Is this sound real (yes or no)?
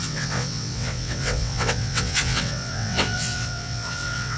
no